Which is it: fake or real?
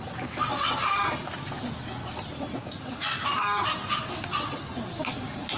real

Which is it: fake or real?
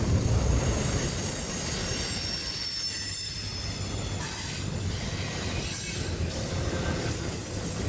fake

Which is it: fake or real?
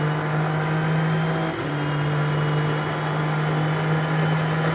real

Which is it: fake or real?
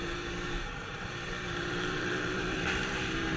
fake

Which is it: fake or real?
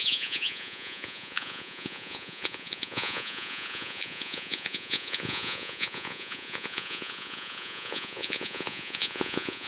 fake